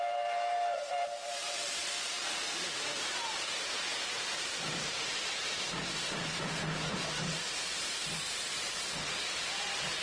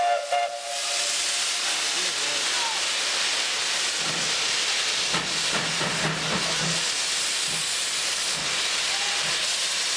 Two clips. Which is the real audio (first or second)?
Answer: second